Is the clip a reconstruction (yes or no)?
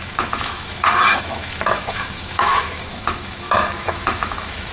yes